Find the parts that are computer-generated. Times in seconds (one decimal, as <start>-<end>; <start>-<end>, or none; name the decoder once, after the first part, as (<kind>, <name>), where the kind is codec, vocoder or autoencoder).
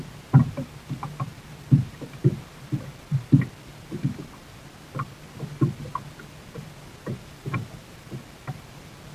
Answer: none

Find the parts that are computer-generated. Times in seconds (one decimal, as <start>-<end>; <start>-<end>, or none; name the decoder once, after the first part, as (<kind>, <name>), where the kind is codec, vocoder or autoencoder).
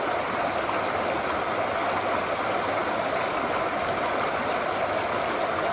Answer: none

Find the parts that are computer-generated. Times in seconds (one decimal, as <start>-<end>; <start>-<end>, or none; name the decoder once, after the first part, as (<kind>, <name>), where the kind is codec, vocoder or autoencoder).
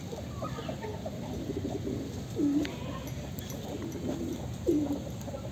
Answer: none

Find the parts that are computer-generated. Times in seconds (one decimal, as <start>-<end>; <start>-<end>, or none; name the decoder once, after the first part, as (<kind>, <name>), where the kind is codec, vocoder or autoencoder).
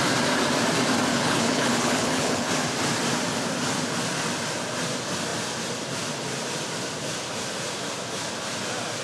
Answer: 1.1-2.5 (codec, HILCodec)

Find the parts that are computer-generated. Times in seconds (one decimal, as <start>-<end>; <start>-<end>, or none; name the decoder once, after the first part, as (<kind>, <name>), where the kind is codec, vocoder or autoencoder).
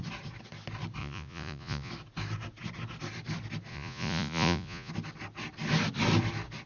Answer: 1.0-1.9 (vocoder, Vocos); 3.7-4.9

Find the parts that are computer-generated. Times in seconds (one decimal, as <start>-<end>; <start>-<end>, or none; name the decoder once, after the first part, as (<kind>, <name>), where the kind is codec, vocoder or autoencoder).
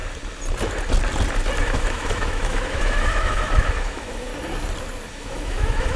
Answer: 1.6-4.3 (autoencoder, DAC-VAE); 5.1-6.0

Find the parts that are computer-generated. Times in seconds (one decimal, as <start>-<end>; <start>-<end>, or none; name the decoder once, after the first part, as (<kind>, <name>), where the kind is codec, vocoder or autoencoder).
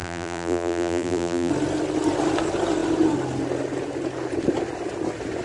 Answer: 0.0-1.5 (vocoder, BigVGAN v2)